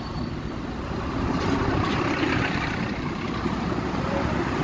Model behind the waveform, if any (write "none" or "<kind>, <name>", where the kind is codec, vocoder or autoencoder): vocoder, BigVGAN v2